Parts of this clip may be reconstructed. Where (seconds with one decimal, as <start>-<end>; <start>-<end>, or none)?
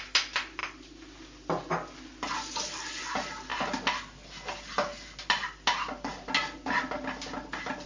none